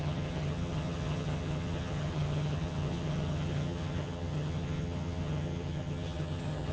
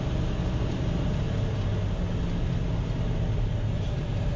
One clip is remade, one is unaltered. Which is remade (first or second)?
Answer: first